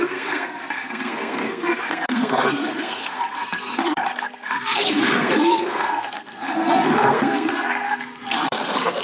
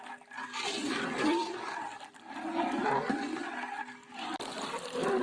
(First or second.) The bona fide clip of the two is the second